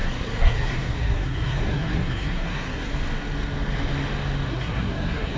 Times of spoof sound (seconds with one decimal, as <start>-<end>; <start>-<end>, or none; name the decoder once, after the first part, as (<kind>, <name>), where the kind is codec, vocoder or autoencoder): 0.0-2.9 (codec, SNAC); 4.5-5.4